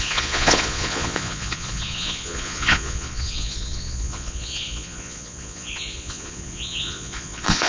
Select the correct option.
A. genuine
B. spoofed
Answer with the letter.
B